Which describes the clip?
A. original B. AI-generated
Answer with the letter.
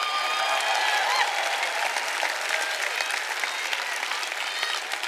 A